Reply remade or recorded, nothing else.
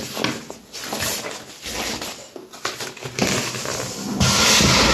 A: recorded